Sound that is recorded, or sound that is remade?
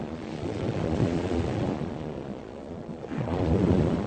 remade